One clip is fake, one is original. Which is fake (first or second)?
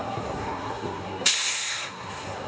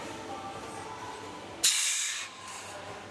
first